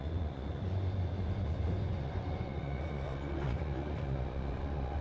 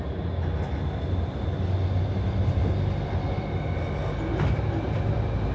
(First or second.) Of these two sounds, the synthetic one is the first